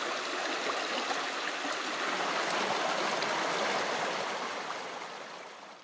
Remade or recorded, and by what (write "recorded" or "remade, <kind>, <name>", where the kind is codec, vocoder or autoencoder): recorded